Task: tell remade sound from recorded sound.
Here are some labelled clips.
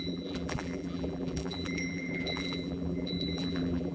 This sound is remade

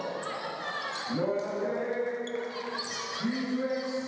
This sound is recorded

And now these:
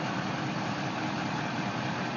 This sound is recorded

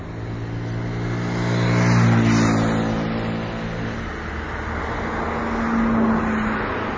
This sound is recorded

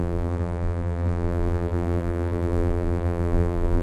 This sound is remade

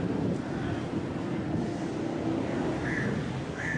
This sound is recorded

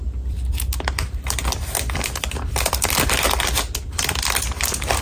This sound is remade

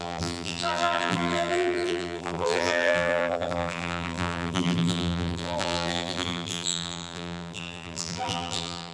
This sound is remade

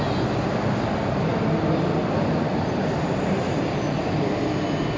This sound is recorded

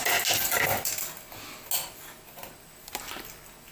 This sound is recorded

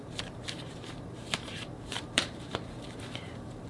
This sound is remade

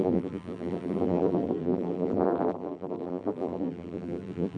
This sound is remade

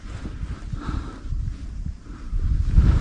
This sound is remade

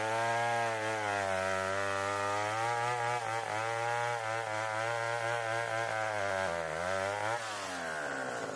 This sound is recorded